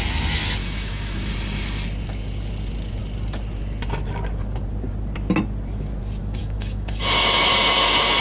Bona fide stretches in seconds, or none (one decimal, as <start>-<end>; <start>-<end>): 0.0-0.6; 1.3-6.2